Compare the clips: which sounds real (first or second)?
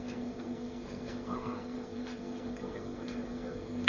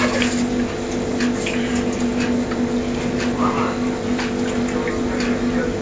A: second